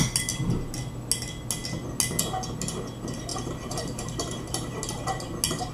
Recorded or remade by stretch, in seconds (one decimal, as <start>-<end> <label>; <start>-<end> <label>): 0.0-3.3 recorded; 3.3-4.8 remade; 4.8-5.7 recorded